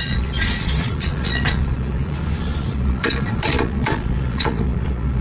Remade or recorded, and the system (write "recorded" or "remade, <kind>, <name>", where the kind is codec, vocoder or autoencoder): remade, vocoder, Vocos